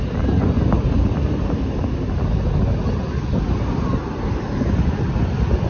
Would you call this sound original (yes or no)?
yes